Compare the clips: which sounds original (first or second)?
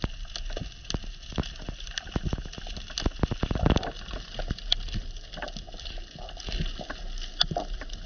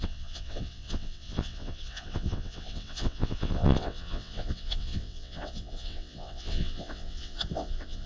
first